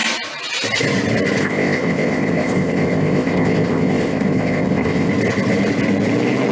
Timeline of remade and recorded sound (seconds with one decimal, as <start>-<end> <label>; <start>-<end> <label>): 0.0-1.4 recorded; 1.4-5.1 remade; 5.1-6.5 recorded